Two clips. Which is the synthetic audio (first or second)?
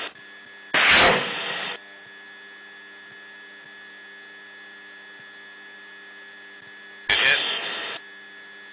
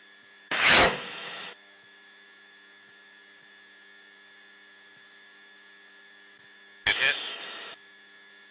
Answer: second